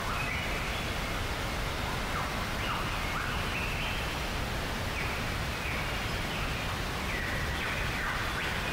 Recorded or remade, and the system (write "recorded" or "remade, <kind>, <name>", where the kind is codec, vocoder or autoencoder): recorded